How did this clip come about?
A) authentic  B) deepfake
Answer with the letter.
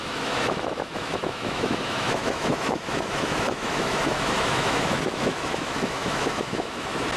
B